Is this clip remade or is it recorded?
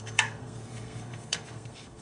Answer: remade